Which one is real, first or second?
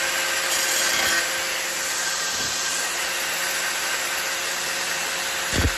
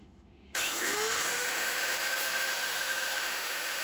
first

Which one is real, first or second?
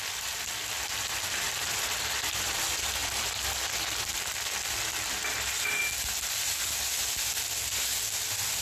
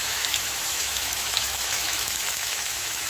first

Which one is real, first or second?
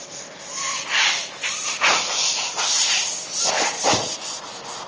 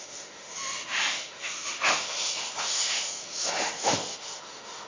first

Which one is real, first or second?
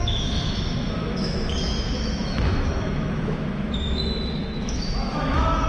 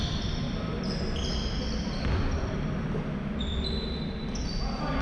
second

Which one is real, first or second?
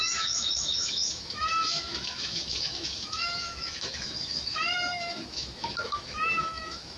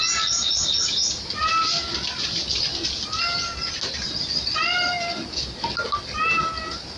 second